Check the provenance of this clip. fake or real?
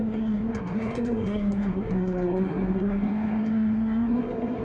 fake